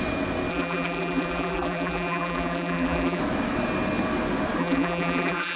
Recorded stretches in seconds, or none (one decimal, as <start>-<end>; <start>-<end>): 0.0-0.5; 3.2-4.6